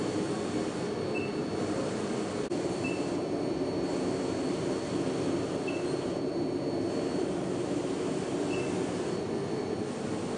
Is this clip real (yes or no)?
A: yes